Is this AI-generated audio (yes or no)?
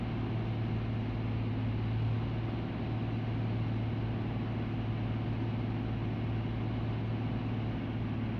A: no